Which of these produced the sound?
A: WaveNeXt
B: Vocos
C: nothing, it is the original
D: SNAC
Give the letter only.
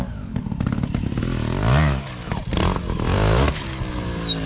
C